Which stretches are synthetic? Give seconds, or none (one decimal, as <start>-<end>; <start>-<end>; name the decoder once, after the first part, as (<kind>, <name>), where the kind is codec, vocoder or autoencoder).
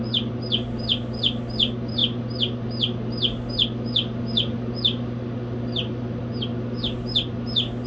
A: none